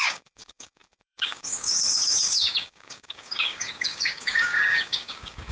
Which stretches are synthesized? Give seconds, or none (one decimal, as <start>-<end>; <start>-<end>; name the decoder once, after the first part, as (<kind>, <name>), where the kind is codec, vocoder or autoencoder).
0.0-5.5 (codec, DAC)